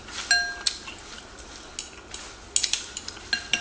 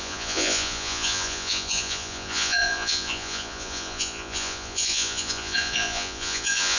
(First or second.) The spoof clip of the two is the second